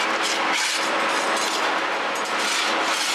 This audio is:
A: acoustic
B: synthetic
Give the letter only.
A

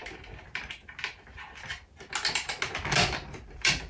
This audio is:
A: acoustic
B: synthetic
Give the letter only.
A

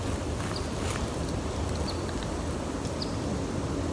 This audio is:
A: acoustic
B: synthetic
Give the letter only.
A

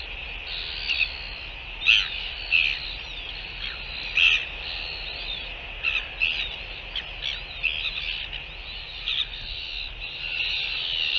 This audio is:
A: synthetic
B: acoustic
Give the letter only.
B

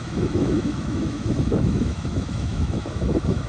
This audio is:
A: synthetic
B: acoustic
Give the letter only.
A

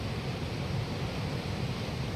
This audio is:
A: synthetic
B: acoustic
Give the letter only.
B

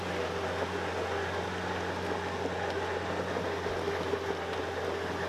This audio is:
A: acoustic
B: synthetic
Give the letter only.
A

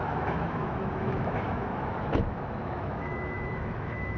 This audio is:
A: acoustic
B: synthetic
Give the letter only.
B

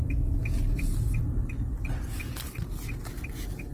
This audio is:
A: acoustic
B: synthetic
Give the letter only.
A